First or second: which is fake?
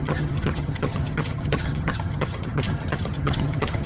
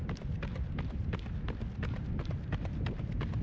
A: first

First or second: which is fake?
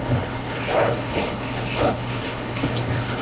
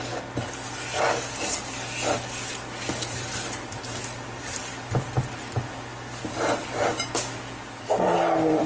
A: first